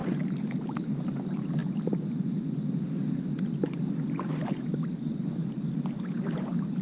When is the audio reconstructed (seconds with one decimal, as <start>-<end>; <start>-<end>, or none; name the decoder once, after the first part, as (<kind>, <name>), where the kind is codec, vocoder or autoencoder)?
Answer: none